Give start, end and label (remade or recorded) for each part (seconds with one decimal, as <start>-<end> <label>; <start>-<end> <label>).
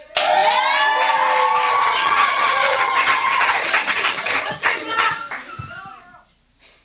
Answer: 0.0-1.7 recorded; 1.7-5.2 remade; 5.2-6.8 recorded